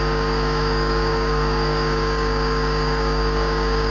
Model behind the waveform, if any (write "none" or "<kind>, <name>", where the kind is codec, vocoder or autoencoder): codec, DAC